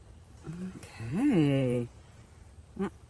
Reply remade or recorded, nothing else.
remade